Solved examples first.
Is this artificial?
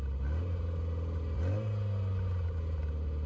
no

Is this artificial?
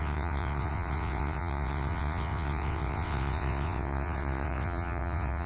yes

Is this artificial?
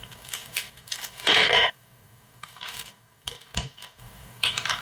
yes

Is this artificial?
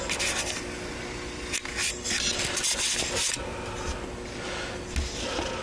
no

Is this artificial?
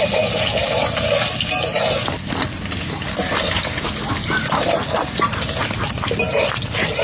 no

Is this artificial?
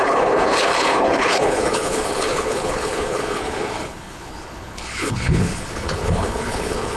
yes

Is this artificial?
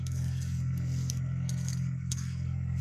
yes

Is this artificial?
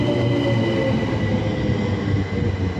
no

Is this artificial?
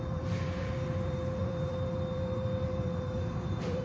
yes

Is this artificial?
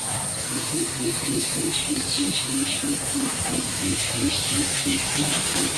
yes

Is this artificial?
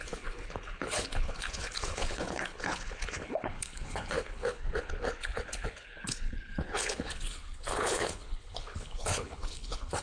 yes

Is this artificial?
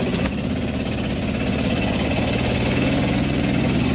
yes